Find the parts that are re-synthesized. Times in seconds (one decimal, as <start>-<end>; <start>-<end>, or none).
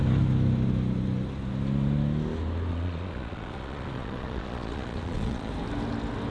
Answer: 2.7-5.5